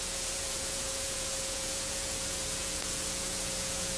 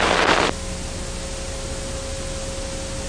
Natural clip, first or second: second